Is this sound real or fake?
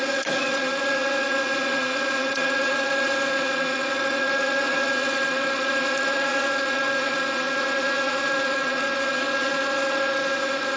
fake